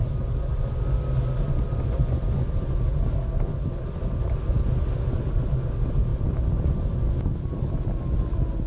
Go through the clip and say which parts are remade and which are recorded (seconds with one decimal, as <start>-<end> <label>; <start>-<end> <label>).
0.0-6.1 recorded; 6.1-7.8 remade; 7.8-8.7 recorded